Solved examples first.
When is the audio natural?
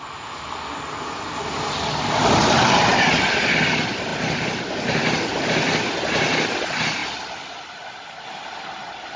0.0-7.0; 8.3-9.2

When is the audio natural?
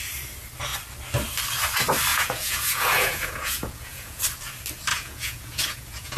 0.0-2.1; 4.2-4.9